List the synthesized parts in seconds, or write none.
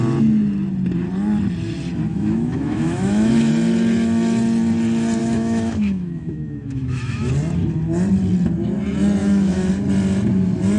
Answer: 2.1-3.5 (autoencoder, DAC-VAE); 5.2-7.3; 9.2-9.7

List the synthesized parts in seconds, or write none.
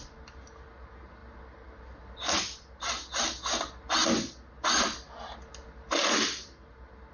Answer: none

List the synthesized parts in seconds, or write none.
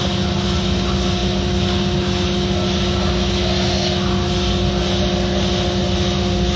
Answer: none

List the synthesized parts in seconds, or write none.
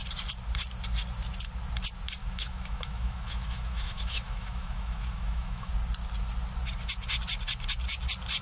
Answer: 2.2-5.7 (autoencoder, DAC-VAE)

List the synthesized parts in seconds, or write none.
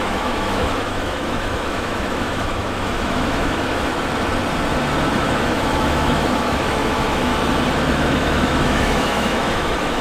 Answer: 0.0-3.9 (autoencoder, DAC-VAE); 5.1-7.3; 7.9-10.0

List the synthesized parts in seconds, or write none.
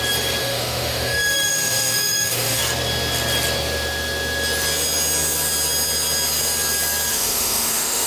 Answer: 0.4-2.6 (autoencoder, DAC-VAE); 7.1-8.1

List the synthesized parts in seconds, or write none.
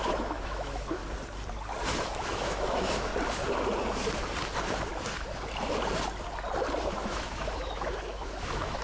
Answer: 0.0-1.0 (autoencoder, DAC-VAE); 1.9-3.1; 6.8-8.8